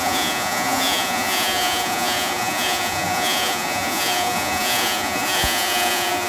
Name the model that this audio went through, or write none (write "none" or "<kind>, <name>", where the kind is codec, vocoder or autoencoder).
vocoder, Vocos